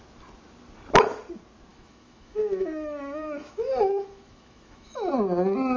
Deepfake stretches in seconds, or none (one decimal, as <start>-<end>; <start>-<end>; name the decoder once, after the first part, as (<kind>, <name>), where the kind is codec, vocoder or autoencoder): 1.7-5.1 (autoencoder, DAC-VAE)